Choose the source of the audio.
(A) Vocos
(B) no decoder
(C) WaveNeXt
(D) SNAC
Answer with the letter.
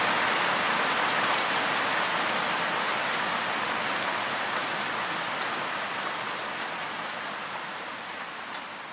B